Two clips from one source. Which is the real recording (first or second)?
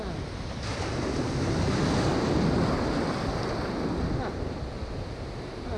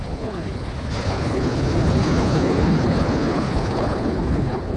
first